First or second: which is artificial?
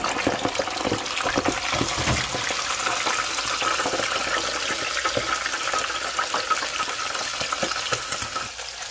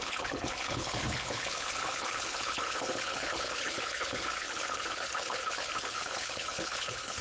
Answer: second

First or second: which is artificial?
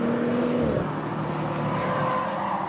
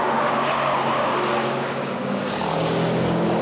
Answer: second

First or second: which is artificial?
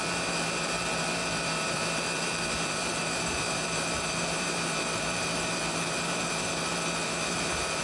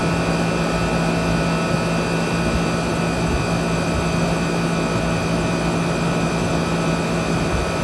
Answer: first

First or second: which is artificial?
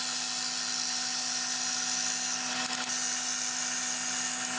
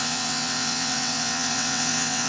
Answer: second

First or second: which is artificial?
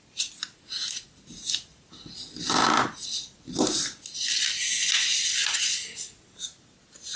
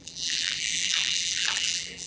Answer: second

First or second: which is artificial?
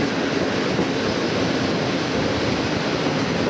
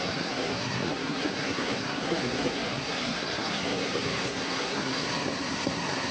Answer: second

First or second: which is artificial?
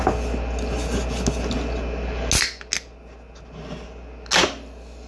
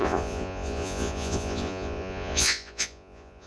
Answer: second